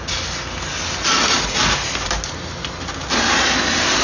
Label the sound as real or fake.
real